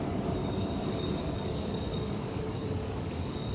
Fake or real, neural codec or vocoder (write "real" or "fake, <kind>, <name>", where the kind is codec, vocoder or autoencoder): fake, codec, DAC